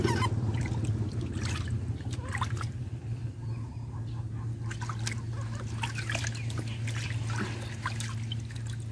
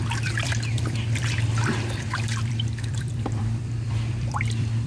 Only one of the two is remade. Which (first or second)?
second